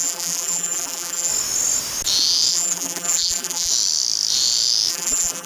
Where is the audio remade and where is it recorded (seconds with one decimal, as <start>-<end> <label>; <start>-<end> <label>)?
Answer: 0.0-1.3 remade; 1.3-2.5 recorded; 2.5-3.7 remade; 3.7-4.9 recorded; 4.9-5.5 remade